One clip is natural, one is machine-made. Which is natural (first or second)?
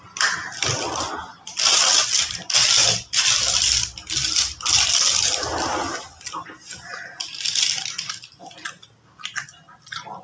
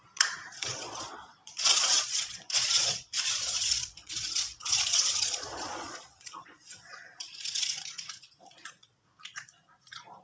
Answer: first